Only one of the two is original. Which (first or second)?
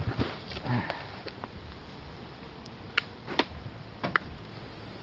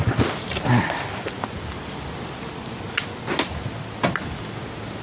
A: second